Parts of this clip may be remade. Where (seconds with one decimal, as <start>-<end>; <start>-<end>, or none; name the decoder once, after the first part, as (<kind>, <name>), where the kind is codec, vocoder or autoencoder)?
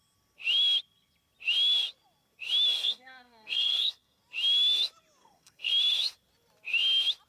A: 2.8-4.2 (codec, SNAC); 5.2-5.7